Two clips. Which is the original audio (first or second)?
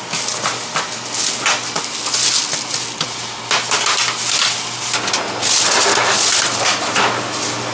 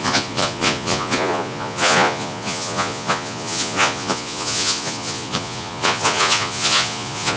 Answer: first